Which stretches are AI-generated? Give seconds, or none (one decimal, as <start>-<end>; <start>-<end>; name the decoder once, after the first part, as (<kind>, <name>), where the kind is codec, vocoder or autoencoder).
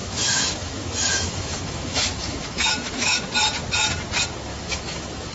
0.0-3.2 (autoencoder, DAC-VAE); 4.5-5.3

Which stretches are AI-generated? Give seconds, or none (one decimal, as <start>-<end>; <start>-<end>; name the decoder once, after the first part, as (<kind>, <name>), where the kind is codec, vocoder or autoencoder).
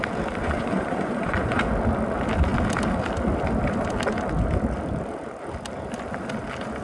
0.4-1.7 (vocoder, Vocos)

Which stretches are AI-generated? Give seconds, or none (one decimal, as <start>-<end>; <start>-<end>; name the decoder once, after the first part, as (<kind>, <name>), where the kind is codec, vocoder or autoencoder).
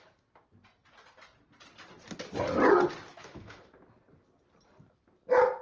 3.1-3.6 (autoencoder, DAC-VAE)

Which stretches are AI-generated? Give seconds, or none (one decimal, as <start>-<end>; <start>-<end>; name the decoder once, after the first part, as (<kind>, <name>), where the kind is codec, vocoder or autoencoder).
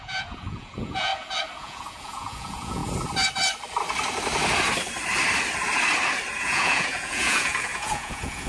0.0-1.1 (vocoder, Vocos); 1.6-2.8; 6.4-8.5